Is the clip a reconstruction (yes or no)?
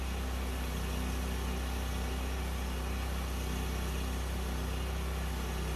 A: no